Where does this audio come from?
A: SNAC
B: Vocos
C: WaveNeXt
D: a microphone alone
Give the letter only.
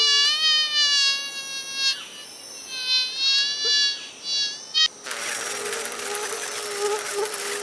D